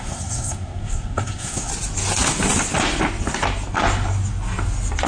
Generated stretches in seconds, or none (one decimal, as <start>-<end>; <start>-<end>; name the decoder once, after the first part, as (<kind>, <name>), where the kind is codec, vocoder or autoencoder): 0.0-1.7 (codec, SNAC)